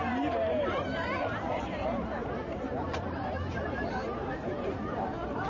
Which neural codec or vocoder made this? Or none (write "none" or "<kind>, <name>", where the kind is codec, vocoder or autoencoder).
vocoder, BigVGAN v2